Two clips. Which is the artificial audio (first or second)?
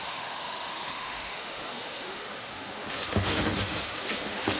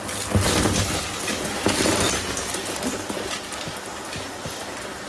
first